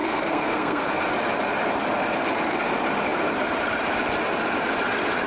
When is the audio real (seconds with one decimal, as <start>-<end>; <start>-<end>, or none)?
0.9-5.3